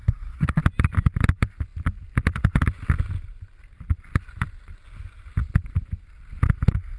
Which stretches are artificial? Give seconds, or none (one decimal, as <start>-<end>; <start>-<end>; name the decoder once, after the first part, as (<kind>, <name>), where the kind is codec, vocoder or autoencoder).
0.0-0.6 (codec, SNAC)